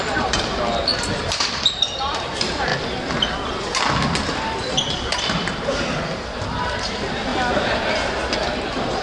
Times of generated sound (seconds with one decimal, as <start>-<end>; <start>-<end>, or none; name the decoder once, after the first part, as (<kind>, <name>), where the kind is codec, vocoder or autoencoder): 0.0-2.7 (vocoder, BigVGAN v2); 4.8-7.3; 8.6-9.0